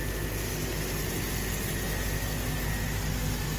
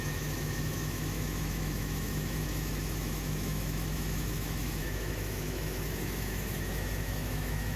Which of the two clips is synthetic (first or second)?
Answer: second